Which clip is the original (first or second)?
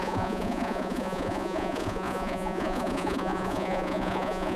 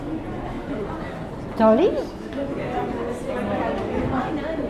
second